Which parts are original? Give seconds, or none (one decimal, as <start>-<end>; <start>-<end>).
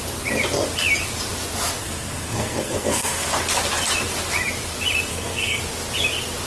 0.0-1.8; 3.3-5.1; 5.6-6.5